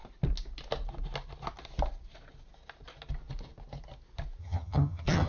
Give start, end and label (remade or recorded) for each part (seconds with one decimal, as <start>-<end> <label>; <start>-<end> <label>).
0.0-4.4 recorded; 4.4-5.3 remade